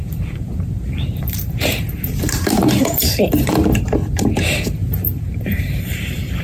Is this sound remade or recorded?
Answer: remade